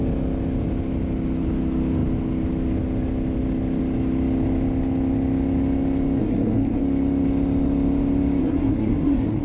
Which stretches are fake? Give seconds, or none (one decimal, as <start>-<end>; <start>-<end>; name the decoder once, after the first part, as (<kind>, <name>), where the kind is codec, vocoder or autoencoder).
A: 6.2-6.8 (codec, SNAC); 8.4-9.4